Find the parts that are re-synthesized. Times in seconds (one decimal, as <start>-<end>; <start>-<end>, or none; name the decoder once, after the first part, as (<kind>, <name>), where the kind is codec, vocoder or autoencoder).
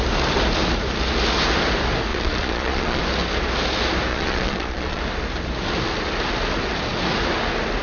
2.1-3.0 (vocoder, Vocos); 4.1-5.0